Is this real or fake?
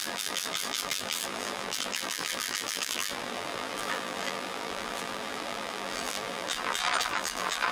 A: fake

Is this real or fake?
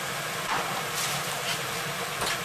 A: fake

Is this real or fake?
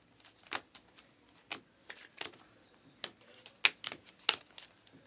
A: real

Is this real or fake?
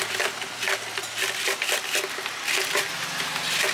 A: real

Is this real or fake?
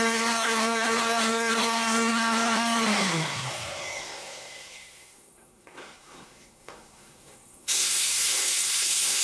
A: fake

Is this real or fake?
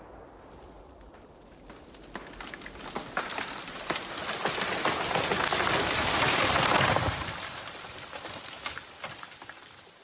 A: real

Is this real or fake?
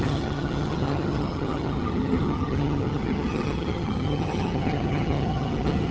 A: fake